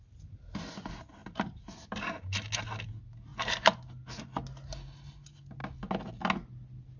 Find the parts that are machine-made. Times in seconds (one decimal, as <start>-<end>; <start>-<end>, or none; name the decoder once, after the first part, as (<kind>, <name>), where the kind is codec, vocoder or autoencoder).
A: none